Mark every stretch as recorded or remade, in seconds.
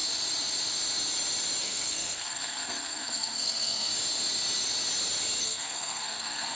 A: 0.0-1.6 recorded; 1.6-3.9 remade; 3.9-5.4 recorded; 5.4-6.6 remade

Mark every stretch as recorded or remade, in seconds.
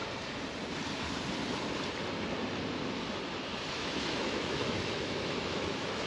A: 0.0-3.7 recorded; 3.7-6.1 remade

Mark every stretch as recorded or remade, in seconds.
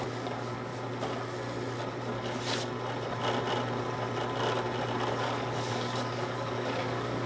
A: 0.0-0.7 remade; 0.7-5.1 recorded; 5.1-7.3 remade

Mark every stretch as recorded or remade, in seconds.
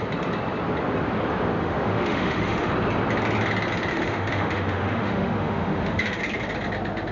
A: 0.0-1.6 recorded; 1.6-2.7 remade; 2.7-3.9 recorded; 3.9-6.2 remade; 6.2-7.1 recorded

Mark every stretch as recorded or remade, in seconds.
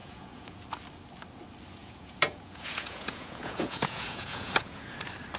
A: 0.0-0.6 remade; 0.6-1.8 recorded; 1.8-5.0 remade; 5.0-5.4 recorded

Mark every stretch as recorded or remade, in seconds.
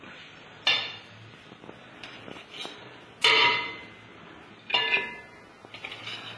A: 0.0-6.4 recorded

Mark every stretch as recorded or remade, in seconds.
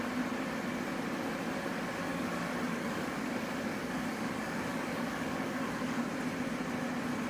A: 0.0-2.1 recorded; 2.1-6.1 remade; 6.1-7.3 recorded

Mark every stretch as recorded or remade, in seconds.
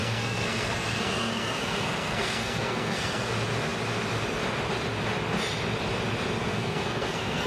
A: 0.0-3.3 remade; 3.3-6.4 recorded; 6.4-7.5 remade